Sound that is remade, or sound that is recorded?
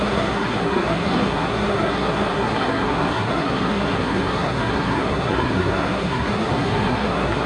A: remade